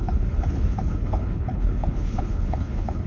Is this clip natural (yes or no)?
no